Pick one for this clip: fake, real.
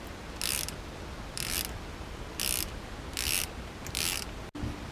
real